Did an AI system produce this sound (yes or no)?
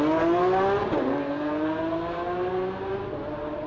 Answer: no